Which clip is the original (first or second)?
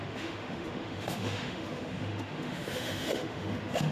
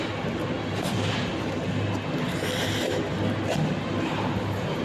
second